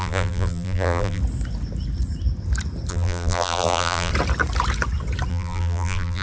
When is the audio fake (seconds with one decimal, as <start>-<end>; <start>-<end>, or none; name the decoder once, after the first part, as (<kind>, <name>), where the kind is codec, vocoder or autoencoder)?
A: 0.0-1.2 (vocoder, BigVGAN v2); 2.9-4.1; 5.3-6.2